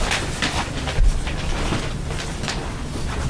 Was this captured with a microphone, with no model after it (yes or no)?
yes